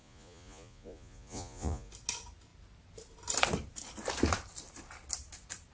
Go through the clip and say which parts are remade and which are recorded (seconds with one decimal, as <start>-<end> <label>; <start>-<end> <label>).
0.0-1.9 remade; 1.9-5.7 recorded